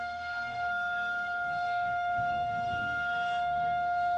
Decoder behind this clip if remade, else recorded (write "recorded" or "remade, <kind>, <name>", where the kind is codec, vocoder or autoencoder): remade, codec, SNAC